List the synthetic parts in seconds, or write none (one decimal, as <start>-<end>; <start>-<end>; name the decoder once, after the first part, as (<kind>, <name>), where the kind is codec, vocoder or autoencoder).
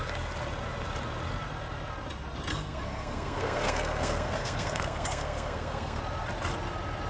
2.5-6.0 (codec, SNAC)